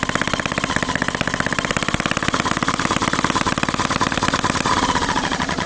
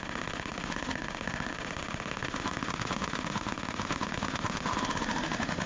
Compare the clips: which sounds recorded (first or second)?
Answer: first